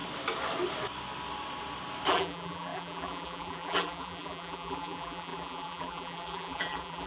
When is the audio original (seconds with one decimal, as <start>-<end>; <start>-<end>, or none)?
0.0-2.1